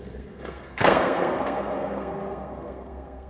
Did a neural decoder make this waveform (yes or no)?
yes